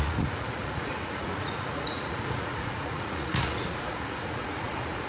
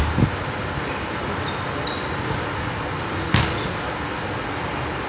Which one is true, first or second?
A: second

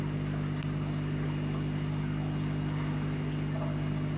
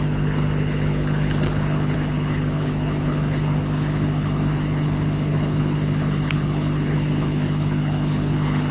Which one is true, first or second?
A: first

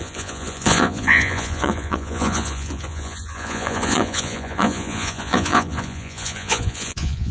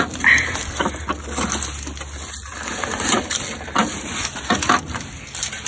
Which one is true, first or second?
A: second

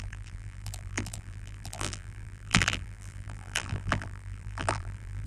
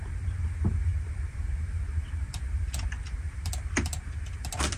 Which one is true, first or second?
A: second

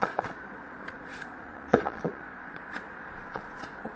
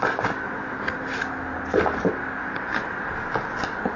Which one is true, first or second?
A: second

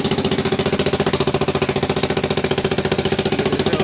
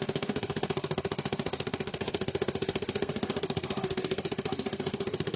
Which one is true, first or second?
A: first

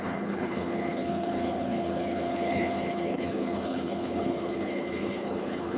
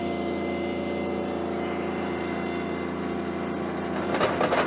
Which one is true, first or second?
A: second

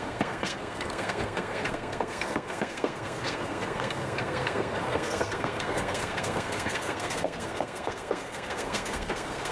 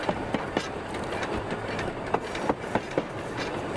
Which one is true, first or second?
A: second